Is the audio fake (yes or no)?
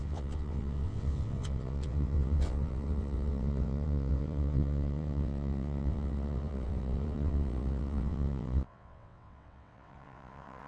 yes